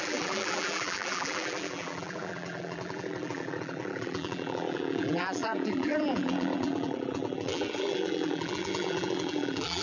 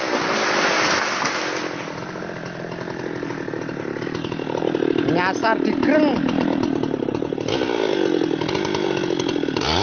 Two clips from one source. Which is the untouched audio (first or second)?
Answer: second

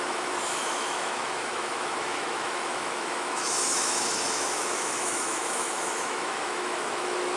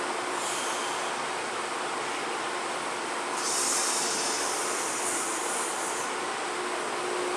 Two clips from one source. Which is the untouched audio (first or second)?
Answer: second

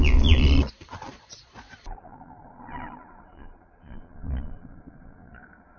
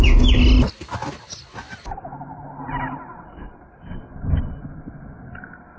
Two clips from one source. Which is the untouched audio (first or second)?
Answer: second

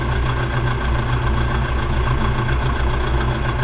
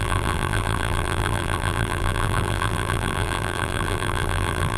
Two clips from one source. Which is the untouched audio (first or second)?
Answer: first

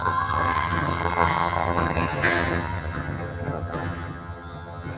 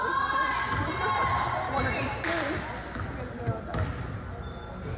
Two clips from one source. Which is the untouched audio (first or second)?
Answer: second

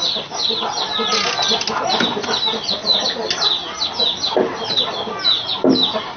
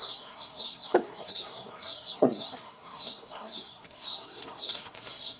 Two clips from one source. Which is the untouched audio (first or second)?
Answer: first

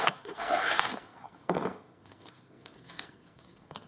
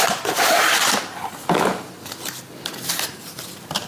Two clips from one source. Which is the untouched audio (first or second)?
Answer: second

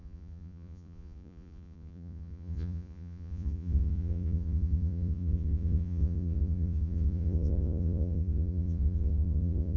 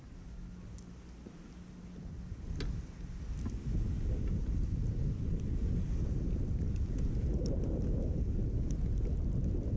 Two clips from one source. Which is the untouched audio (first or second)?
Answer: second